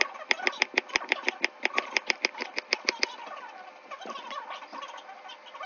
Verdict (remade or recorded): recorded